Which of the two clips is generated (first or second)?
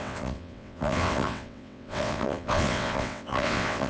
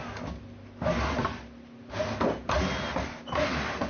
first